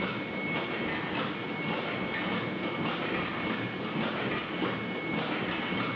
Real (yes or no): yes